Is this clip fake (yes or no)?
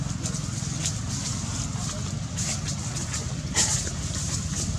no